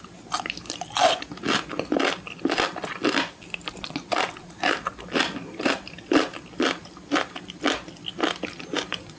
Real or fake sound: real